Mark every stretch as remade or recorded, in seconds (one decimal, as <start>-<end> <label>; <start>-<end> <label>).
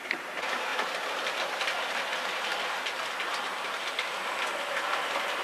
0.0-0.7 remade; 0.7-1.6 recorded; 1.6-2.5 remade; 2.5-3.0 recorded; 3.0-3.5 remade; 3.5-4.7 recorded; 4.7-5.4 remade